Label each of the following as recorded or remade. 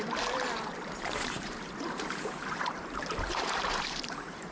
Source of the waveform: remade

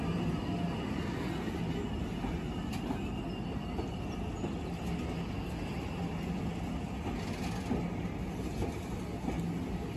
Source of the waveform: recorded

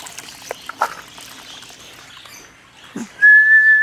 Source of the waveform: recorded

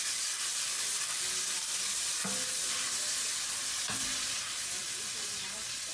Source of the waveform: recorded